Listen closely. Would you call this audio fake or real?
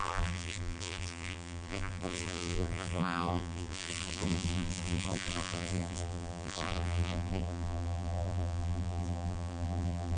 fake